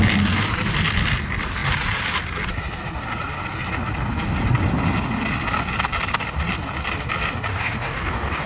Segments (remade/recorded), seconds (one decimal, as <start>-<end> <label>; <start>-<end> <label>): 0.0-7.5 recorded; 7.5-8.5 remade